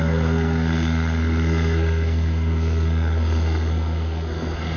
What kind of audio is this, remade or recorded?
remade